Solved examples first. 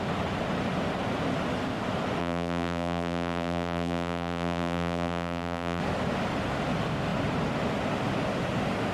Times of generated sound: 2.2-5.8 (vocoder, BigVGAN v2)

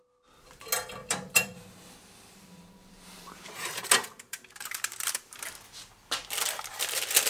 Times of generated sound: 1.0-5.4 (vocoder, BigVGAN v2)

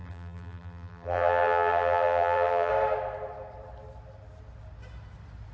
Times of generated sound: 0.0-2.7 (vocoder, BigVGAN v2)